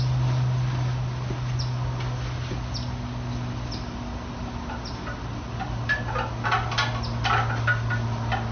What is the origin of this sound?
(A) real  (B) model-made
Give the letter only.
A